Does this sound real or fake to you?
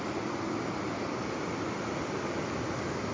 real